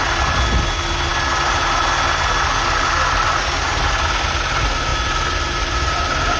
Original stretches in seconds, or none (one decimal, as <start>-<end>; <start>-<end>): 0.0-6.4